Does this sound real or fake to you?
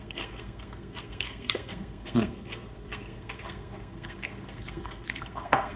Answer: fake